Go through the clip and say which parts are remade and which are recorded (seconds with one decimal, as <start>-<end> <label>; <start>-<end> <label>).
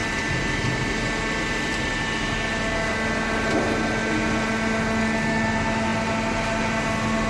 0.0-7.3 recorded